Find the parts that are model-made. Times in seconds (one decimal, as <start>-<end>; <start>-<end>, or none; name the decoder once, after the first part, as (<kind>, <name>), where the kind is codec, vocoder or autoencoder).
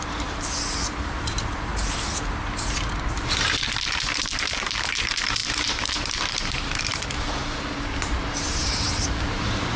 0.0-1.7 (vocoder, BigVGAN v2); 4.9-9.8